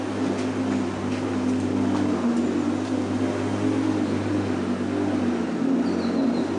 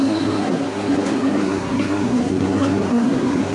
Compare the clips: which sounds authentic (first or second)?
first